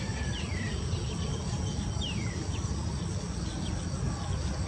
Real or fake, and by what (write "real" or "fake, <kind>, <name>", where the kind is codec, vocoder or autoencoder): real